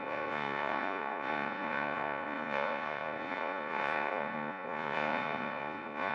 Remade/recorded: remade